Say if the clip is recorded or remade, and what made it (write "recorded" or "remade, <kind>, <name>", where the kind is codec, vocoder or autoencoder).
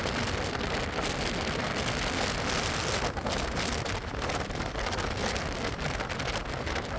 recorded